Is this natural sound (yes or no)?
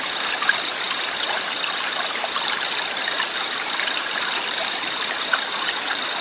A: no